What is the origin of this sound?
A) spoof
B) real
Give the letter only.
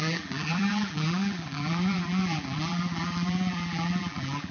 A